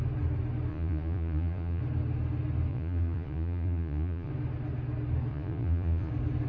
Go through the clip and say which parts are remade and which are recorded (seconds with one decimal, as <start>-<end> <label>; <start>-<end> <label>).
0.0-0.7 recorded; 0.7-1.8 remade; 1.8-2.7 recorded; 2.7-4.3 remade; 4.3-5.3 recorded; 5.3-6.1 remade; 6.1-6.5 recorded